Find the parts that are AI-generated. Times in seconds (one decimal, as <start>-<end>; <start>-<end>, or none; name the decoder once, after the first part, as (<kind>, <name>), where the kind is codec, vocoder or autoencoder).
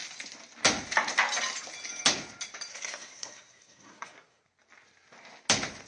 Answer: 2.7-4.4 (codec, SNAC)